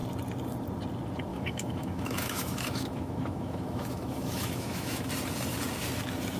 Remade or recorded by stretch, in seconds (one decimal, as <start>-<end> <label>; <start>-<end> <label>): 0.0-1.3 recorded; 1.3-5.1 remade; 5.1-6.4 recorded